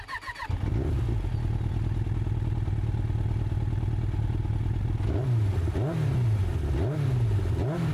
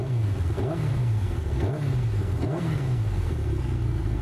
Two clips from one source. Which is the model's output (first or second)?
second